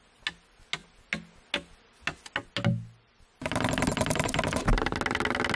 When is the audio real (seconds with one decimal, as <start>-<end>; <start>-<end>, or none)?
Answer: 0.0-5.6